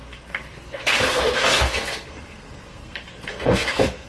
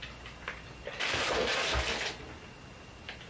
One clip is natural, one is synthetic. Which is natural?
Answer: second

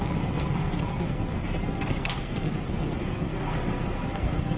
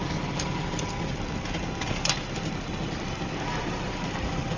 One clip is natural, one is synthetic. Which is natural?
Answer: second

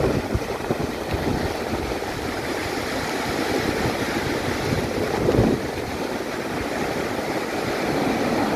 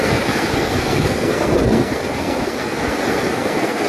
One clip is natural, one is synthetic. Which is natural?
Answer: first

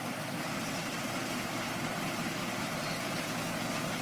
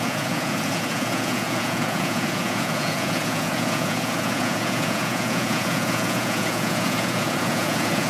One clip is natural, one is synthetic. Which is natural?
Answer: first